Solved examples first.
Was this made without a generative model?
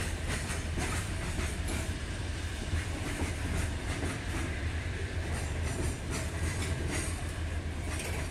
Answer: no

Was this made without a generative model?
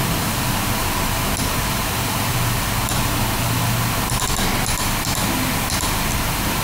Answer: yes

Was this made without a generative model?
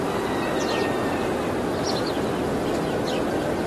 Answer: yes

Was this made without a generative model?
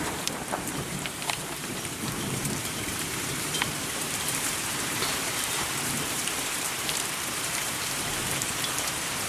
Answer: no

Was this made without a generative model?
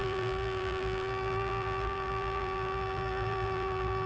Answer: no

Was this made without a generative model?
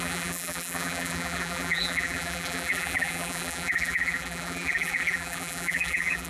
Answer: no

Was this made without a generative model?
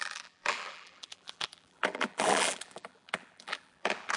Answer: no